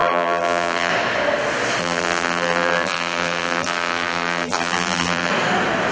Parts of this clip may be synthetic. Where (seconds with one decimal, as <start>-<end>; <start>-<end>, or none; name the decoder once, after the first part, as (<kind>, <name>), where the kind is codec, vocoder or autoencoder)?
0.0-0.9 (vocoder, BigVGAN v2); 1.8-5.3